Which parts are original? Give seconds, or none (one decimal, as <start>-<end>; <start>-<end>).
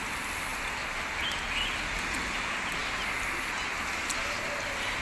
0.5-1.9; 2.8-4.0